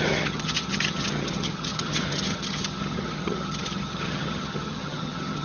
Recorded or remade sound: remade